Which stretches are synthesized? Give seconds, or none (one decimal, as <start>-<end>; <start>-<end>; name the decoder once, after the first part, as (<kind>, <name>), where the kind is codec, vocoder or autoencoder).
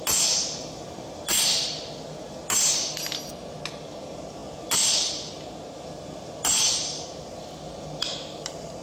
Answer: none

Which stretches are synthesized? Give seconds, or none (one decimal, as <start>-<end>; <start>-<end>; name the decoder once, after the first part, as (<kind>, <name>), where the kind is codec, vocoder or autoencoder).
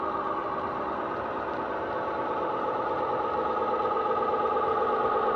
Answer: 0.4-3.1 (vocoder, BigVGAN v2)